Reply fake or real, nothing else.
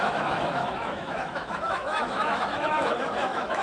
fake